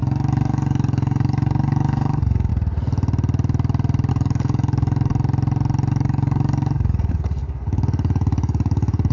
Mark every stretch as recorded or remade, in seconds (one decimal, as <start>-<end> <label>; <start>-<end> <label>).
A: 0.0-2.5 remade; 2.5-4.1 recorded; 4.1-5.1 remade; 5.1-5.9 recorded; 5.9-9.1 remade